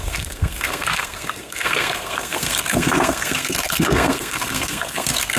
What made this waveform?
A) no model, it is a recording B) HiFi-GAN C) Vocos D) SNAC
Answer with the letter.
D